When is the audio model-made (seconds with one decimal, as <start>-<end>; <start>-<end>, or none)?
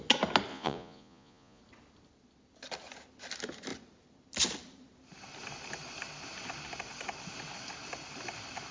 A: 0.5-1.6